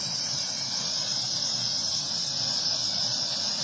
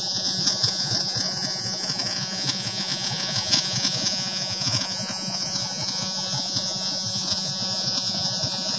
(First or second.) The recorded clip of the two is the first